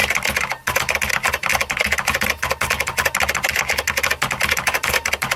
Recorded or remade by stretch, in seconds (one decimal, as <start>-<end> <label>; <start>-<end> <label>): 0.0-5.4 recorded